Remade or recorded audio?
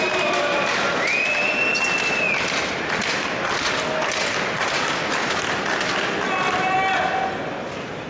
recorded